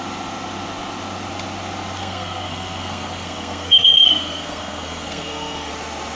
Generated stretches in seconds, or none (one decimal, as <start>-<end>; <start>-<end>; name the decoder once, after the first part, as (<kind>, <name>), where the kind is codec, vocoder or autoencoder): 2.0-5.7 (codec, SNAC)